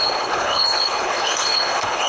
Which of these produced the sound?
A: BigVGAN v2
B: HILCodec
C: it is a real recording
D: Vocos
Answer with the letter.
B